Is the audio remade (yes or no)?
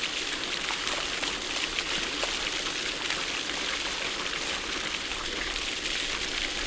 no